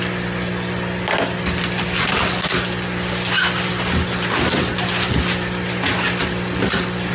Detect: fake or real real